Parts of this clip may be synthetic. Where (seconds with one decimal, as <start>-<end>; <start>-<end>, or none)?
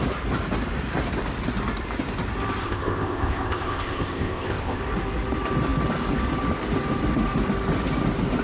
2.6-4.8